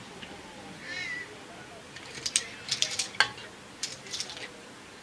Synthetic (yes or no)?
no